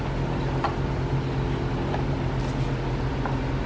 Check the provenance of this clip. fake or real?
real